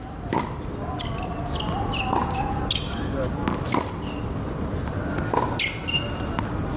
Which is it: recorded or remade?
recorded